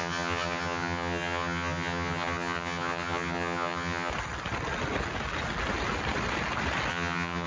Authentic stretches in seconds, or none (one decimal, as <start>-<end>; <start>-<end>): 4.1-6.9